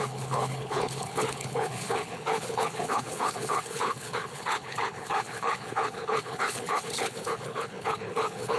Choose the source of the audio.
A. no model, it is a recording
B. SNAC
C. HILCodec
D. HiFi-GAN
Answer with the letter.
C